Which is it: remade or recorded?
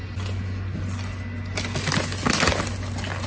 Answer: recorded